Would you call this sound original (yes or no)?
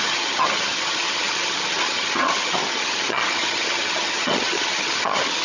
no